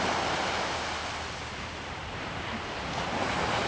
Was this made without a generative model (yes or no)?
yes